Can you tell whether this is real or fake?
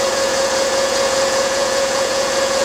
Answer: fake